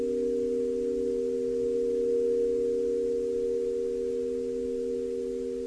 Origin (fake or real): real